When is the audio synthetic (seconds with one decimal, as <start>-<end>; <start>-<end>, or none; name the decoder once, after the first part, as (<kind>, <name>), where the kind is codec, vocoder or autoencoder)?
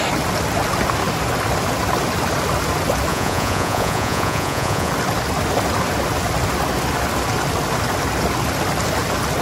3.1-4.9 (vocoder, Vocos)